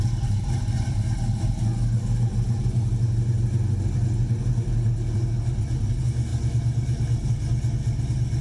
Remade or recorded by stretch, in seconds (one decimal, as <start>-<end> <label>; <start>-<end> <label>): 0.0-8.4 recorded